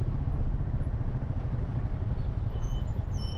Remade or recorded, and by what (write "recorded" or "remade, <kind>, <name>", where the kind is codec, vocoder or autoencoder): recorded